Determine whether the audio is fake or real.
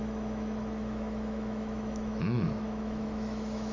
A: fake